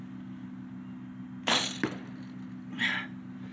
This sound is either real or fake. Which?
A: real